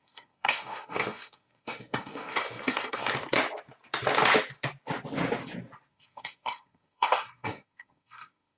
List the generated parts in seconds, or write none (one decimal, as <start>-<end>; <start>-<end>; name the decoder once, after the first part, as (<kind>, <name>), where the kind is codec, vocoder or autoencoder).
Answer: 0.0-3.1 (codec, SNAC); 5.9-8.6

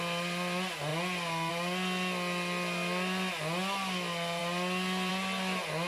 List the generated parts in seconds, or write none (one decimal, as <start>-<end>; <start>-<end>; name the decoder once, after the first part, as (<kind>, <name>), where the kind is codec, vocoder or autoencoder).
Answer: none

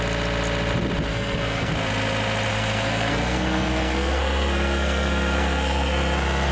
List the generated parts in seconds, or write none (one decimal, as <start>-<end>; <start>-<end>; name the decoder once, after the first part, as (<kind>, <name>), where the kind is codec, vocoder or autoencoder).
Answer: 1.1-1.7 (codec, SNAC); 2.5-6.5

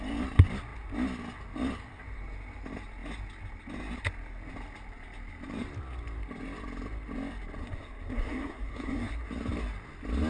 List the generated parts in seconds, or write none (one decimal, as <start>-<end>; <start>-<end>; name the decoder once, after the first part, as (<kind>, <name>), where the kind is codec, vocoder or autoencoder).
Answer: 7.6-9.3 (codec, SNAC)

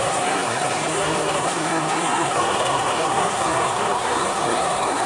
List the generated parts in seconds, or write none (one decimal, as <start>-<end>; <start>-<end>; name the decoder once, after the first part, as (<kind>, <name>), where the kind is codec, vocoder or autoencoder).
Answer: 0.0-5.1 (codec, SNAC)

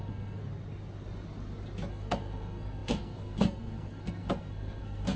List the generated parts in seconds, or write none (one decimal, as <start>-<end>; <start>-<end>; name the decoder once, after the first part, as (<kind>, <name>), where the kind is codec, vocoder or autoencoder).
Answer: 0.0-0.4 (codec, SNAC); 1.9-5.2